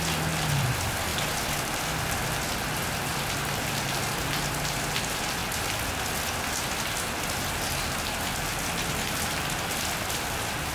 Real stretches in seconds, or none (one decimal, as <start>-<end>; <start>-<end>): 0.0-10.7